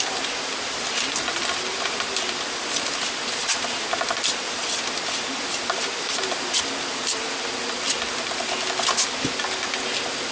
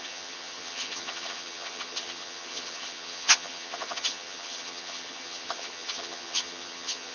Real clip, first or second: first